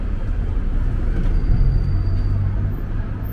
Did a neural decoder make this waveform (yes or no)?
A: no